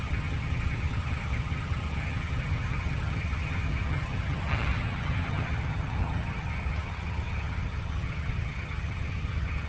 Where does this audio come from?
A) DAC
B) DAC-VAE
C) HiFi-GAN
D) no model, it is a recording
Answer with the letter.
C